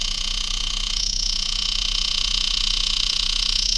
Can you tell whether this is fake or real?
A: fake